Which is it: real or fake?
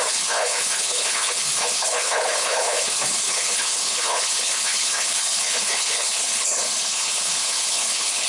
fake